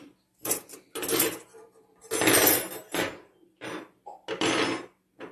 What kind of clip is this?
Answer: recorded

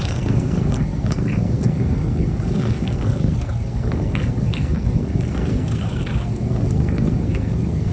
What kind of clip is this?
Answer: remade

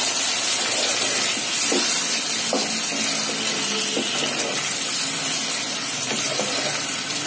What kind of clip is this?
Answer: recorded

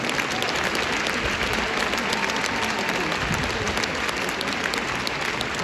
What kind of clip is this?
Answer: recorded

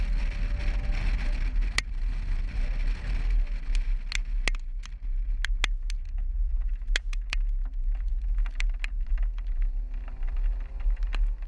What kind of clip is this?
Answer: recorded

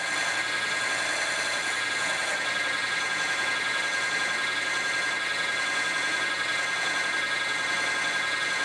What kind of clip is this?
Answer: recorded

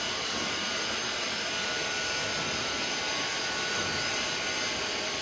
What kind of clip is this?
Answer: recorded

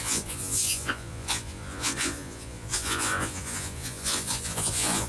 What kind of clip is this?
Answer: remade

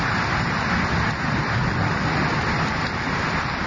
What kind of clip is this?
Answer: recorded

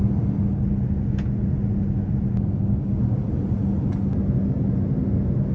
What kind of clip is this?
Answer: recorded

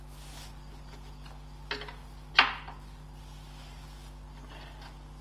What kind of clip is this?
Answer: recorded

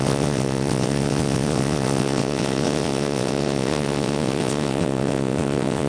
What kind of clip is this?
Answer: remade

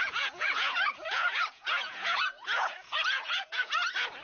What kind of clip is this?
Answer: remade